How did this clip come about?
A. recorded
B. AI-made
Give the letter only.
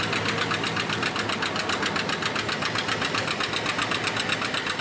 A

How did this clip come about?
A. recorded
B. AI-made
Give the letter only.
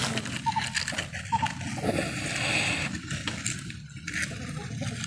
A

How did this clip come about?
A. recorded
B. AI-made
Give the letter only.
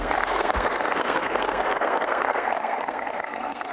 B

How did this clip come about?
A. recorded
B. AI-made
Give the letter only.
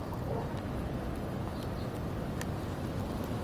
A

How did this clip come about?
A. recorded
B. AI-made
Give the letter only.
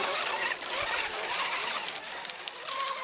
A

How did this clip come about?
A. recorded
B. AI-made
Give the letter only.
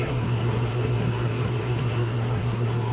B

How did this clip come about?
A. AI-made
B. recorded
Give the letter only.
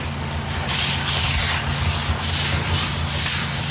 B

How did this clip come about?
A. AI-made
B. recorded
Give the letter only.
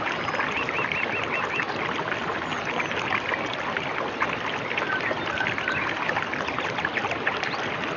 B